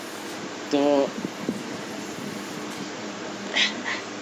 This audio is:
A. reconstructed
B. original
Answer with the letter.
B